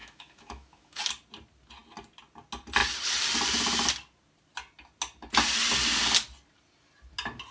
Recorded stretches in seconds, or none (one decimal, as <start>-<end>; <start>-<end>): 1.0-7.5